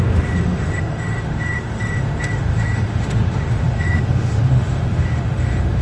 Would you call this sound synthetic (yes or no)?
yes